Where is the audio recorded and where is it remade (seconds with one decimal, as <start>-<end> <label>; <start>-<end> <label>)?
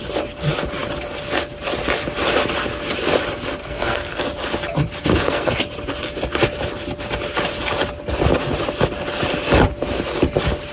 0.0-3.6 recorded; 3.6-4.2 remade; 4.2-5.0 recorded; 5.0-5.6 remade; 5.6-10.7 recorded